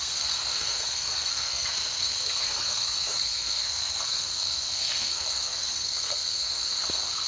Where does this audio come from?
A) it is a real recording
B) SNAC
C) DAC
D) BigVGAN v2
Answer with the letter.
B